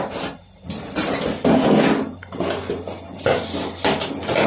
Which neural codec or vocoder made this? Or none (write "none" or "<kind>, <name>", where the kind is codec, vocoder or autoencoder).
none